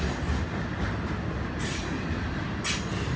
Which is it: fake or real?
real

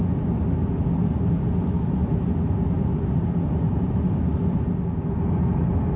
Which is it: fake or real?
real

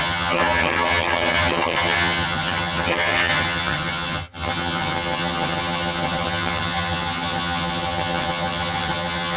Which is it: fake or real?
fake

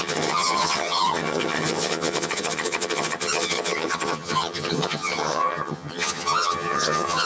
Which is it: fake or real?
fake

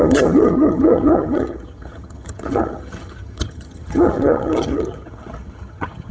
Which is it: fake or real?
fake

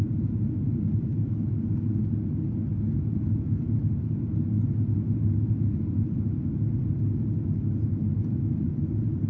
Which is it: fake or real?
real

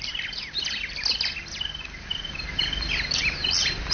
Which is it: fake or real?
real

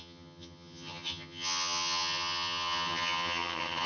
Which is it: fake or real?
fake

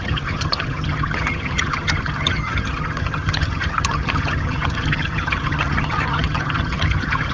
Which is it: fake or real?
fake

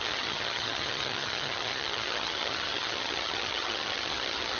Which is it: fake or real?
fake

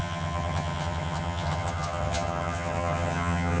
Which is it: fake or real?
fake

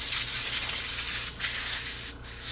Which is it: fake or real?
real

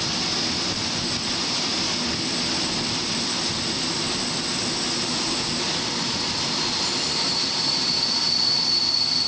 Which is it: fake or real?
real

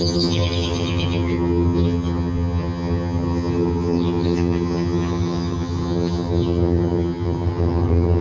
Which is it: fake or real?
fake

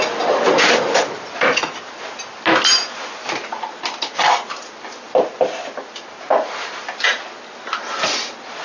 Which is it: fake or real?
real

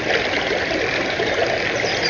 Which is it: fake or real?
real